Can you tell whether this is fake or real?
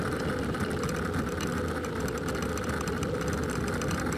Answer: real